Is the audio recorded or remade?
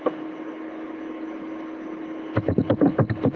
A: recorded